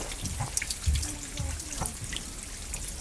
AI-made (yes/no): no